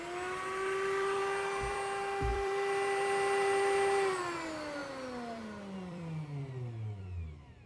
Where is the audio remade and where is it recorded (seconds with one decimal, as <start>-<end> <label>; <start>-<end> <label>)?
0.0-7.7 remade